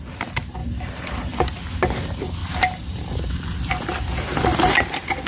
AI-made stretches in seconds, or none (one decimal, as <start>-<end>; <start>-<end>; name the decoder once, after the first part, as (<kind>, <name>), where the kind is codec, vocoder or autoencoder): 0.6-1.4 (vocoder, BigVGAN v2); 2.4-3.3